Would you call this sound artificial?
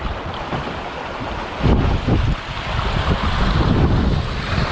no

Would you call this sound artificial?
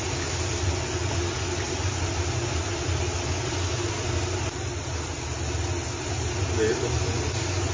no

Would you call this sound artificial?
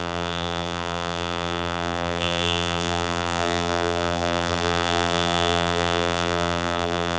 yes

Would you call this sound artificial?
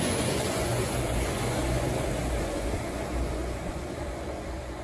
yes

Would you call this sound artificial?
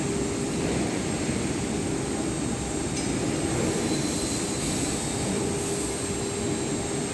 no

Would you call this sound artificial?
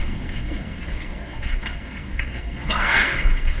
yes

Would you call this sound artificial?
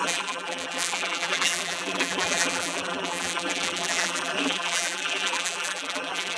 yes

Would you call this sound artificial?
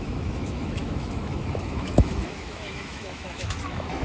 yes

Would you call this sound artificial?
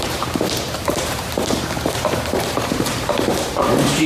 yes